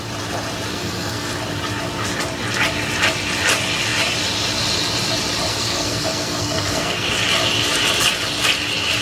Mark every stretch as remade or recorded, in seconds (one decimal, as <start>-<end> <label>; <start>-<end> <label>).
0.0-0.7 recorded; 0.7-1.3 remade; 1.3-5.5 recorded; 5.5-7.1 remade; 7.1-9.0 recorded